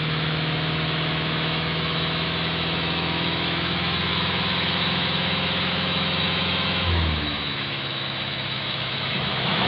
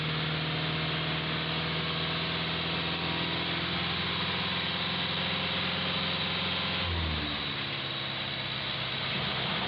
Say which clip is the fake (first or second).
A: first